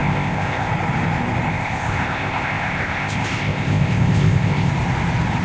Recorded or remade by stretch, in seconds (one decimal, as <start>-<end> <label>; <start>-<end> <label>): 0.0-0.7 remade; 0.7-1.5 recorded; 1.5-4.7 remade; 4.7-5.4 recorded